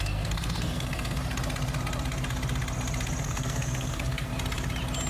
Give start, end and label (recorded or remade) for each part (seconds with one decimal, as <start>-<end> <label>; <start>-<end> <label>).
0.0-1.2 remade; 1.2-3.2 recorded; 3.2-4.3 remade; 4.3-5.1 recorded